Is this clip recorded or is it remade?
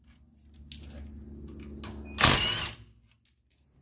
recorded